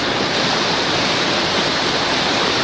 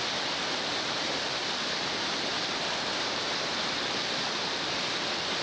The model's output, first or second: first